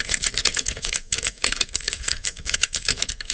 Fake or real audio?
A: fake